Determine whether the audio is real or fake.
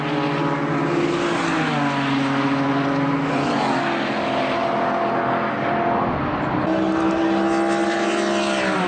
real